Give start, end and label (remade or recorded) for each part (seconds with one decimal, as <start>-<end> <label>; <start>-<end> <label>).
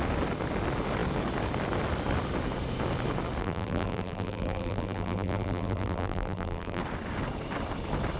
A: 0.0-3.4 recorded; 3.4-6.8 remade; 6.8-8.2 recorded